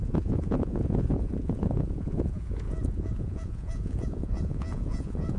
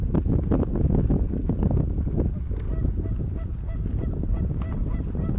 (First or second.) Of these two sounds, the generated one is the first